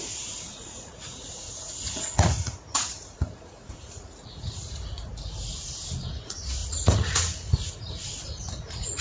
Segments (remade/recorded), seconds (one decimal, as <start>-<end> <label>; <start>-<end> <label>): 0.0-5.1 remade; 5.1-6.1 recorded; 6.1-9.0 remade